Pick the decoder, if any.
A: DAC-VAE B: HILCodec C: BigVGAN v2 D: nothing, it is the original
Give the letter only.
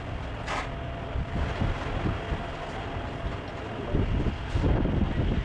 C